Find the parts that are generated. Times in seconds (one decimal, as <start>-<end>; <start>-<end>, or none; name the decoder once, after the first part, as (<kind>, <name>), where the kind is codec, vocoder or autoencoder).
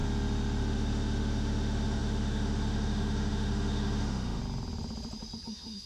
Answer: 0.6-4.4 (autoencoder, DAC-VAE); 5.5-5.9